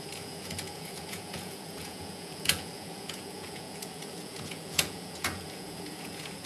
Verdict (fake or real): fake